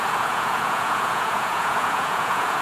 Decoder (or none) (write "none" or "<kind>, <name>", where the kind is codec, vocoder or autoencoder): vocoder, Vocos